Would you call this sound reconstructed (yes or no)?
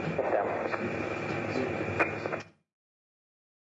no